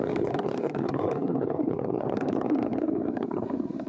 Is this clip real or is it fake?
fake